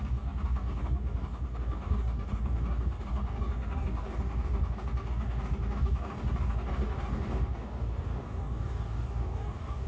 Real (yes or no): no